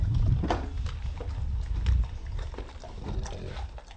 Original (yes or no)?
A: yes